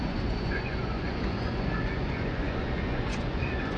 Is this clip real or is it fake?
fake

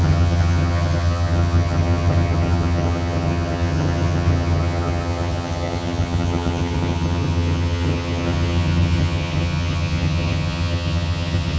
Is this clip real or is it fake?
fake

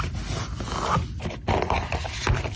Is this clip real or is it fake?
real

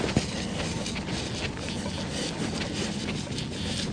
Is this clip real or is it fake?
real